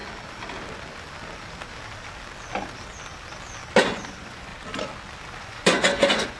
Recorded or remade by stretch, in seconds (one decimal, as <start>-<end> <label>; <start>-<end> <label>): 0.0-3.8 recorded; 3.8-4.5 remade; 4.5-5.4 recorded; 5.4-6.4 remade